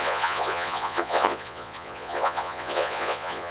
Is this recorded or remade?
remade